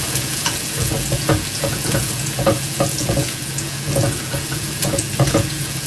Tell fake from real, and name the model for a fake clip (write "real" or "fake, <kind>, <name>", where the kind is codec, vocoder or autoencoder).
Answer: fake, vocoder, Vocos